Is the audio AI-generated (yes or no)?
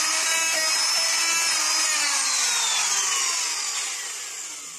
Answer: no